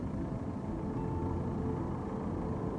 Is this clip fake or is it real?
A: fake